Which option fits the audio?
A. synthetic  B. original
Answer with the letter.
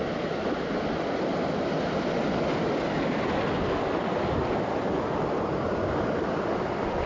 B